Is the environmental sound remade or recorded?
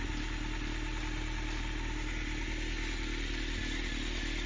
recorded